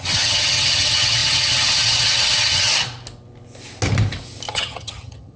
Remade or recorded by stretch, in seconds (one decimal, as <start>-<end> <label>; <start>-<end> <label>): 0.0-2.7 remade; 2.7-4.5 recorded; 4.5-5.4 remade